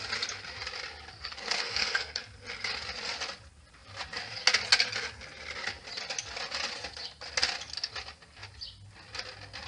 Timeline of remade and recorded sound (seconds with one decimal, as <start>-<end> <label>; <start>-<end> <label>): 0.0-1.1 recorded; 1.1-2.2 remade; 2.2-9.7 recorded